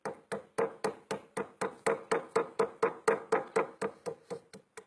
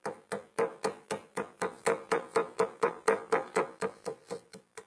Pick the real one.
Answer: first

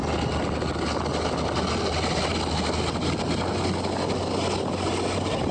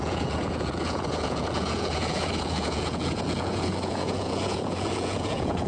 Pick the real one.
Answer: first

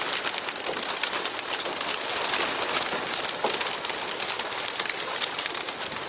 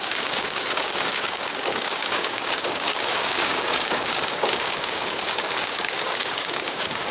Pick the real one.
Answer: first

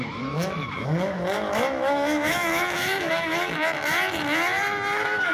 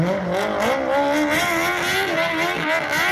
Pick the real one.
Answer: second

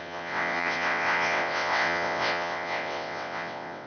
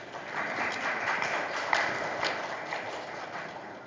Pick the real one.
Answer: second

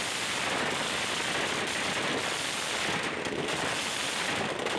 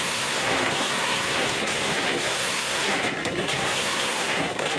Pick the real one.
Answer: first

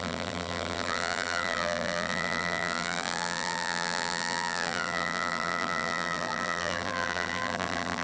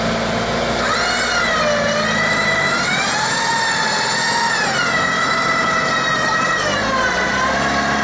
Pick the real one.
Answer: second